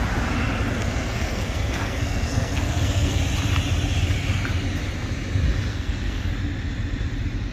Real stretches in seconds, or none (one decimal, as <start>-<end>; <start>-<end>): 0.0-0.8; 3.2-5.7; 6.3-7.5

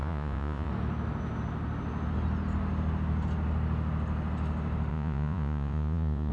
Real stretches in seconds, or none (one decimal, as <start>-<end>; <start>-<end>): 0.7-4.9

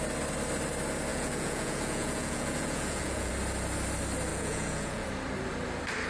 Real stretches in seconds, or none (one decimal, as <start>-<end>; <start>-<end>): 0.0-1.1; 3.3-4.3; 5.1-6.1

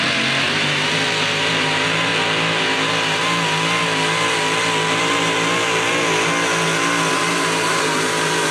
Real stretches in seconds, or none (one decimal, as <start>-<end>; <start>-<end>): 2.1-7.1

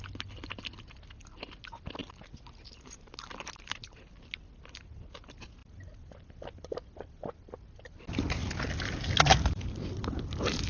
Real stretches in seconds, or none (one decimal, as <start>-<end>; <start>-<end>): 0.0-10.7

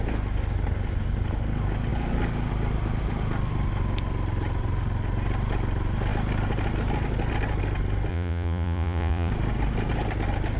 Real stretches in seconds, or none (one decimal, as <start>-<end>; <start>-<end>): 0.0-8.1; 9.3-10.6

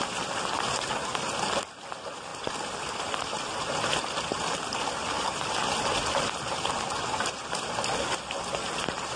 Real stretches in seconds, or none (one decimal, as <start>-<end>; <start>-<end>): 0.0-9.2

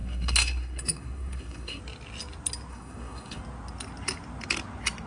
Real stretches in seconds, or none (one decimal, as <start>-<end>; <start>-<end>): 1.8-2.7; 3.4-5.1